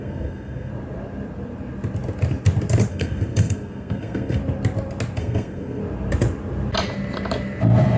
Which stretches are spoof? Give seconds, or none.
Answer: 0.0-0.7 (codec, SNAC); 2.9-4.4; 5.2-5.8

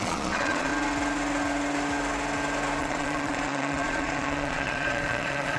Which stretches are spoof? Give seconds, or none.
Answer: 0.0-0.7 (vocoder, Vocos); 2.8-5.6

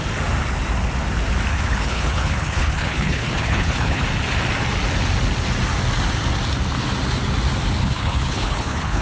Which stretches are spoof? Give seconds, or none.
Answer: 1.5-4.0 (codec, HILCodec); 7.8-9.0

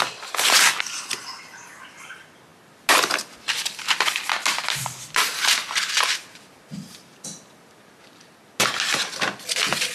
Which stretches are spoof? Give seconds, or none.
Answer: none